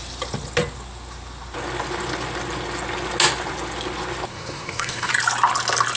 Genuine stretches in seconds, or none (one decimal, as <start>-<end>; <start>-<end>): 0.0-4.3; 5.1-6.0